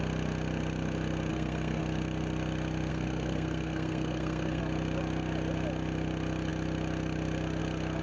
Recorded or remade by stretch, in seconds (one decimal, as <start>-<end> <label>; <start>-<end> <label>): 0.0-1.3 recorded; 1.3-1.8 remade; 1.8-2.9 recorded; 2.9-4.6 remade; 4.6-8.0 recorded